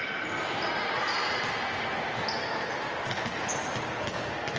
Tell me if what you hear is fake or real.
real